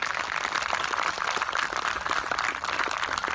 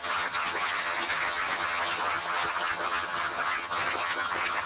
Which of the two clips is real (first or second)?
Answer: first